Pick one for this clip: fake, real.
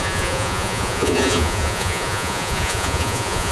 fake